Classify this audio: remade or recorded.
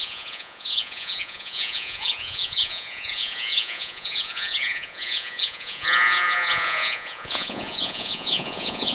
remade